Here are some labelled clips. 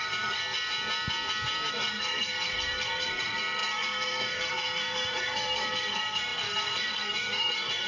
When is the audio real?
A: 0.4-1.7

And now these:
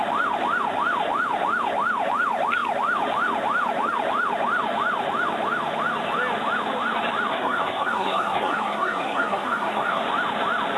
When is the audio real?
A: 0.0-7.3; 10.0-10.8

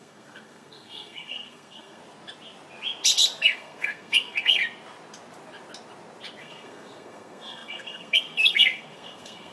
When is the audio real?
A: 2.0-3.4; 4.6-6.4

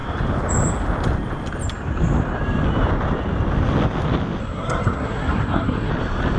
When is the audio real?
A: 0.0-4.4; 5.9-6.4